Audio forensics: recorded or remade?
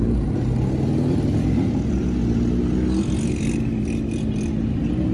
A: recorded